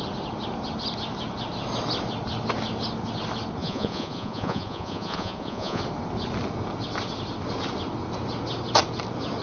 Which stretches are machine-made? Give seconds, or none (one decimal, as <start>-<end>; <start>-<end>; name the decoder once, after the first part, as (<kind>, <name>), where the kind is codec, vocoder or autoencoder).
3.6-5.8 (vocoder, Vocos)